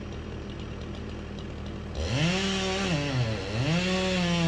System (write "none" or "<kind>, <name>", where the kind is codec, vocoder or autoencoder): none